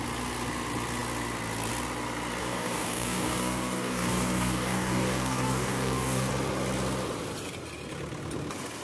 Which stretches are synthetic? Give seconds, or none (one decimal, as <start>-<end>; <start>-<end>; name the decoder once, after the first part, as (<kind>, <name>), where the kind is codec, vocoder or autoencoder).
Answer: 2.4-6.3 (codec, DAC)